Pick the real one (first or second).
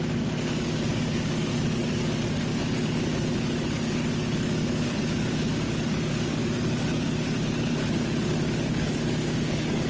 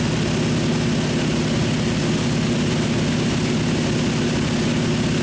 second